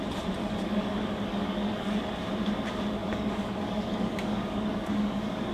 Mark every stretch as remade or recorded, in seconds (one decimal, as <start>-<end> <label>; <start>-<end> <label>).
0.0-0.4 recorded; 0.4-2.1 remade; 2.1-3.0 recorded; 3.0-5.5 remade